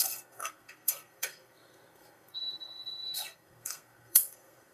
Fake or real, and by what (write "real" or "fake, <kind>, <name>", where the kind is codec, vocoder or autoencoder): fake, codec, SNAC